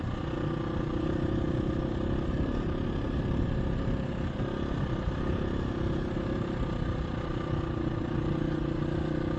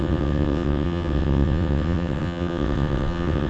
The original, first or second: first